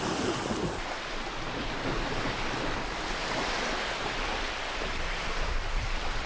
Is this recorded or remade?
recorded